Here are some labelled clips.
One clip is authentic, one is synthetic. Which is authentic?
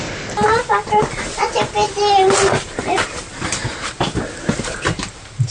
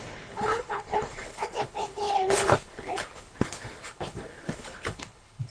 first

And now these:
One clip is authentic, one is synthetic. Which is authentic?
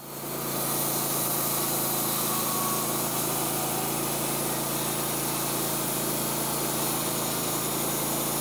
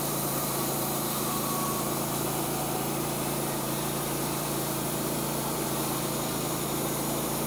first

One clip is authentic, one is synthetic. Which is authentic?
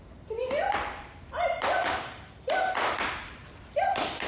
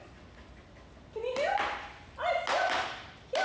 second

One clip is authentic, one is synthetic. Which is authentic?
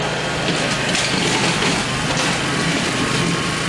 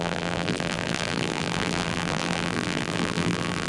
first